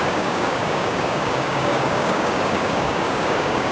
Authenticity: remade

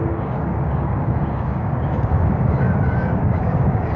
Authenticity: remade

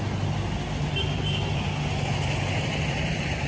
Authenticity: recorded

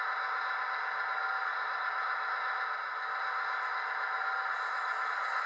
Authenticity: recorded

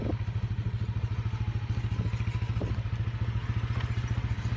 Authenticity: recorded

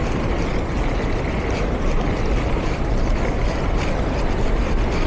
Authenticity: recorded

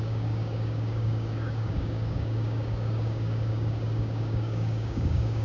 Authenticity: remade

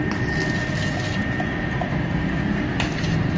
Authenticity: recorded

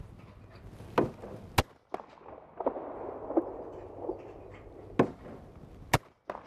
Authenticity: recorded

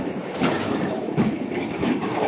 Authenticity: remade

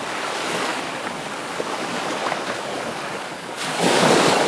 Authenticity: remade